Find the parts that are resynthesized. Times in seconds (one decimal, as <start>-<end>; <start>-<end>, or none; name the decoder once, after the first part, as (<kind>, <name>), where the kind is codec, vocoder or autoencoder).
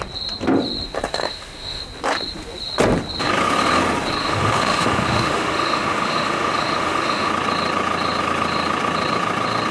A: 1.1-1.8 (autoencoder, DAC-VAE); 4.2-7.3